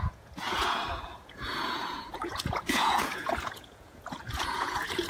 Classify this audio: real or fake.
fake